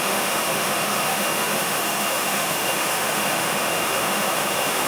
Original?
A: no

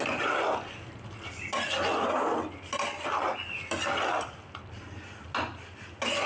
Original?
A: yes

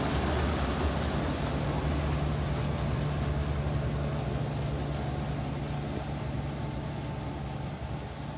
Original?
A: yes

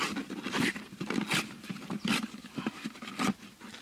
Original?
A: yes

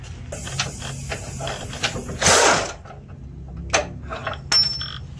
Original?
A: yes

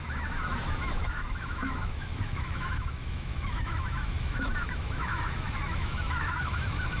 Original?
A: no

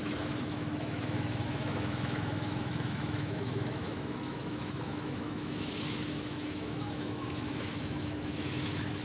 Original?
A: no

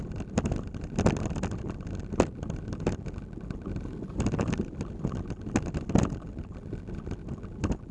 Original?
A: yes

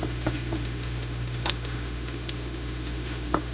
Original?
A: no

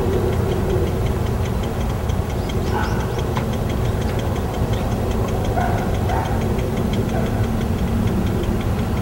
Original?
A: yes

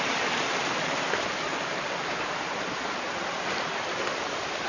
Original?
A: yes